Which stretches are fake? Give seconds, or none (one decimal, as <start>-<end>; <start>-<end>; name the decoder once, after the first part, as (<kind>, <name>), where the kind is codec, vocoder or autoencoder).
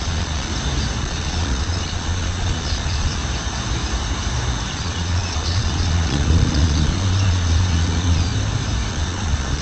0.0-0.5 (vocoder, Vocos); 1.0-3.2; 4.7-8.3; 8.9-9.6